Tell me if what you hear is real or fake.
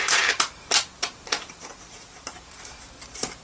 fake